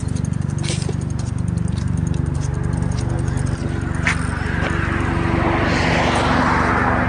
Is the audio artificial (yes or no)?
no